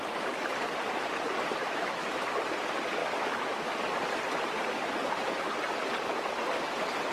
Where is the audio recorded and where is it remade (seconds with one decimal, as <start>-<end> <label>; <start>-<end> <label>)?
0.0-1.6 recorded; 1.6-2.2 remade; 2.2-3.0 recorded; 3.0-3.6 remade; 3.6-7.1 recorded